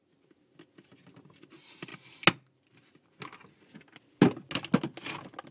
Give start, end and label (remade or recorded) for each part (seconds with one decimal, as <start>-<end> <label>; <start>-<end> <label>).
0.0-5.5 recorded